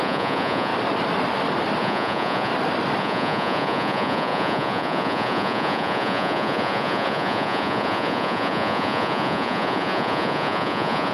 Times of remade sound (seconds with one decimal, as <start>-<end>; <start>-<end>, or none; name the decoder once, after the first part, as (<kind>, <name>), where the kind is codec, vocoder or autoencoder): 0.0-0.7 (vocoder, Vocos); 1.8-2.5; 3.0-11.1